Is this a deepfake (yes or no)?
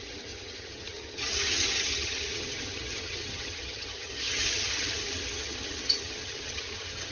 yes